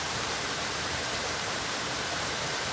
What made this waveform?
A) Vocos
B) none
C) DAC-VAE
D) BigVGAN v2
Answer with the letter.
D